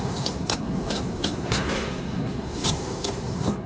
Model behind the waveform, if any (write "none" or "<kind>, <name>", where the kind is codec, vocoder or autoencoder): codec, SNAC